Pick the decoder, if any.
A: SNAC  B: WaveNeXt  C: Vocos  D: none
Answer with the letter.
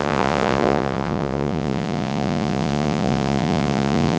C